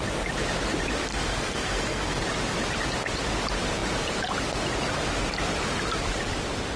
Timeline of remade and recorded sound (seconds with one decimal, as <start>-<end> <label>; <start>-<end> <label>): 0.0-1.1 recorded; 1.1-2.2 remade; 2.2-6.8 recorded